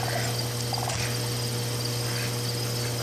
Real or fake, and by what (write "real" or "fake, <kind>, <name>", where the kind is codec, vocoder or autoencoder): real